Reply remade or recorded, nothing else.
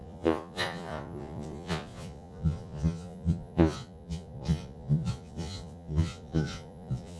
remade